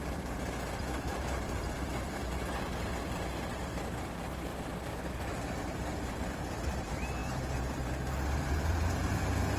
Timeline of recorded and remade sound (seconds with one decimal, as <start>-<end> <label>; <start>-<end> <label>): 0.0-2.2 remade; 2.2-3.0 recorded; 3.0-4.5 remade; 4.5-5.1 recorded; 5.1-9.6 remade